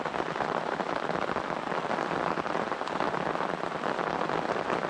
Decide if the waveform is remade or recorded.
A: recorded